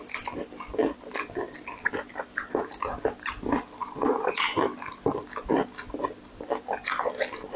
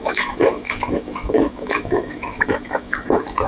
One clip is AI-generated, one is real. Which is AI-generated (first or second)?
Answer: second